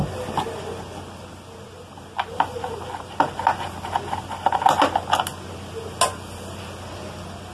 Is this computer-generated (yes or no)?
no